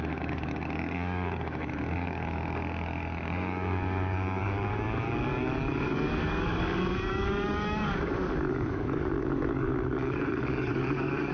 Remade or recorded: remade